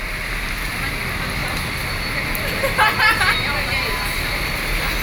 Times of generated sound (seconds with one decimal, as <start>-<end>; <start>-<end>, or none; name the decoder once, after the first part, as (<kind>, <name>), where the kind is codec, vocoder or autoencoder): none